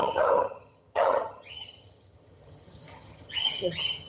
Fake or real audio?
fake